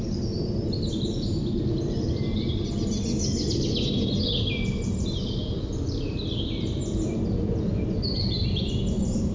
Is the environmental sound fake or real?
real